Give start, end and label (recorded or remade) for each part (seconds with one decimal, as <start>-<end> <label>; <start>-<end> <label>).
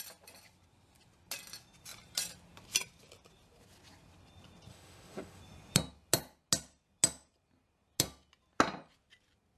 0.0-4.7 recorded; 4.7-5.4 remade; 5.4-9.6 recorded